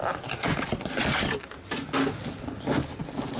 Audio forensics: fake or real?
real